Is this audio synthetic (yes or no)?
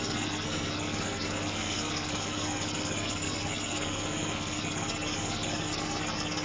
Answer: yes